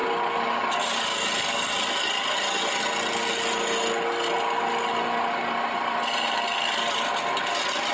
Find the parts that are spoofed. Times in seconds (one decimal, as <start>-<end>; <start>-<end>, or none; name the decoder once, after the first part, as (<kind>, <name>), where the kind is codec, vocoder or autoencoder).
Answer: none